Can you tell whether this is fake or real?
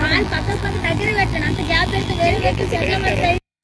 fake